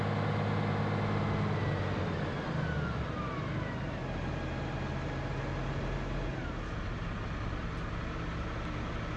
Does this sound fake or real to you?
real